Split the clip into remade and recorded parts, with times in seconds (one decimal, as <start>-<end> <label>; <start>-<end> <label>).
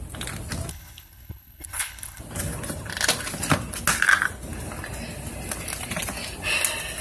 0.0-0.7 recorded; 0.7-2.2 remade; 2.2-7.0 recorded